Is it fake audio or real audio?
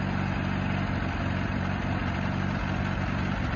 real